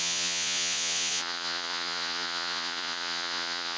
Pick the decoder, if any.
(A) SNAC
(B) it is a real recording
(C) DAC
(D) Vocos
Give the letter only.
D